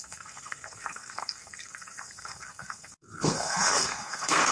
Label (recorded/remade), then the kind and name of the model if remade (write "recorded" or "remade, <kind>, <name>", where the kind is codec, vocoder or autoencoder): remade, codec, SNAC